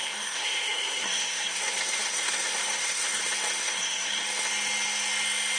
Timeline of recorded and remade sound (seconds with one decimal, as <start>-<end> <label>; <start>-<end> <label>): 0.0-3.2 remade; 3.2-3.6 recorded; 3.6-4.2 remade; 4.2-5.6 recorded